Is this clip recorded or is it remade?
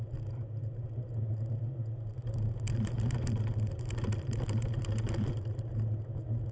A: recorded